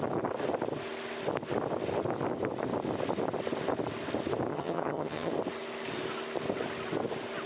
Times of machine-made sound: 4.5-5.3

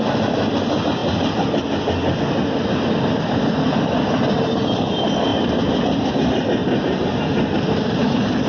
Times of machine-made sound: none